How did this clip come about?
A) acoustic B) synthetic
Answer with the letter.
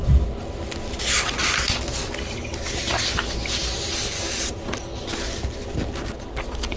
A